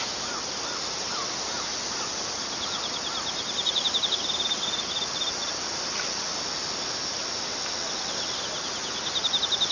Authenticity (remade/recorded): recorded